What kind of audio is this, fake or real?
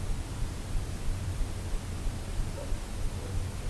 real